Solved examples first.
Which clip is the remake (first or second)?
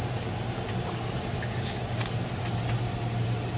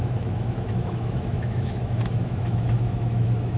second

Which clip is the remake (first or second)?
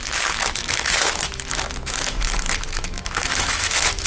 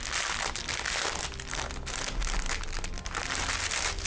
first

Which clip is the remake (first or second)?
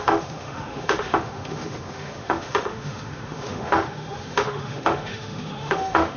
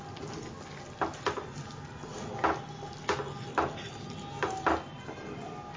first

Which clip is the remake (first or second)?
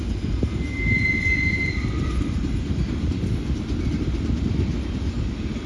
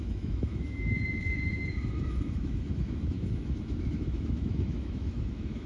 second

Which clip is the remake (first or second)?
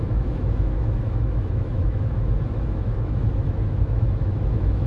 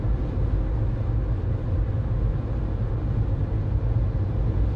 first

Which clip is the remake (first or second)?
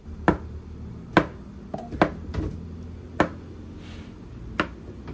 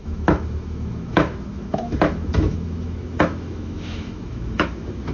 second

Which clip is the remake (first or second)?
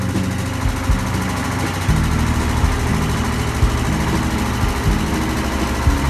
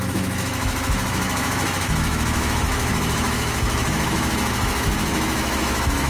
second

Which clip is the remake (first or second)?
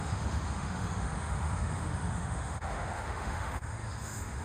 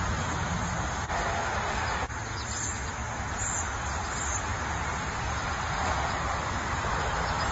first